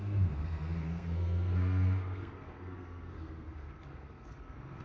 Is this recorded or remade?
remade